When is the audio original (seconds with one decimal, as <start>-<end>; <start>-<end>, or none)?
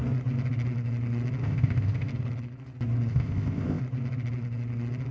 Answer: 0.0-1.4; 2.1-3.1; 3.8-5.1